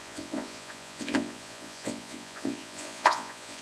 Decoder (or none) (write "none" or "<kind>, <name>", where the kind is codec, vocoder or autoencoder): vocoder, Vocos